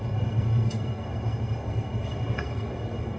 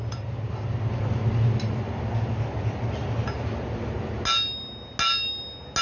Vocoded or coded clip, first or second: first